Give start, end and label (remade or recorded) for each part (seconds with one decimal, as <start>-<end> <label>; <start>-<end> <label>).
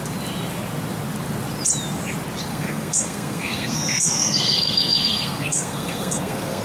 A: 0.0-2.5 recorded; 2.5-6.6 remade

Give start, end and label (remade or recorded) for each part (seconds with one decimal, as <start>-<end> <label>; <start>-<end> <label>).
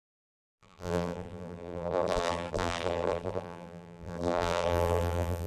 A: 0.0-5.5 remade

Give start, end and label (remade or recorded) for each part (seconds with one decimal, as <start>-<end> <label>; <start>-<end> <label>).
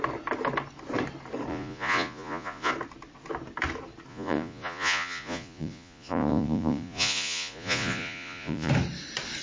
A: 0.0-1.5 recorded; 1.5-2.7 remade; 2.7-4.1 recorded; 4.1-8.7 remade; 8.7-9.4 recorded